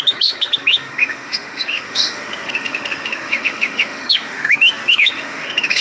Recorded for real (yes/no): no